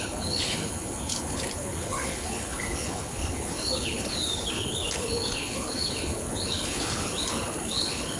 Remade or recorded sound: remade